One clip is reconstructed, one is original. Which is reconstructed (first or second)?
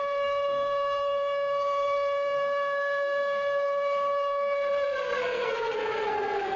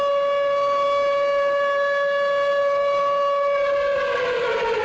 first